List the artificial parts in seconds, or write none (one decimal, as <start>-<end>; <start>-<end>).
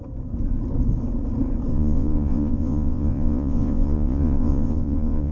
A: 1.7-5.3